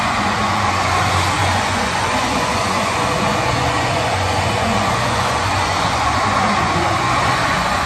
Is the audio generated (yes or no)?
yes